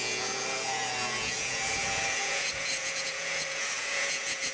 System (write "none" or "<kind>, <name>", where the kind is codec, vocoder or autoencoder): vocoder, Vocos